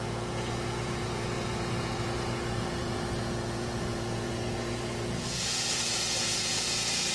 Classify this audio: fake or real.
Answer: fake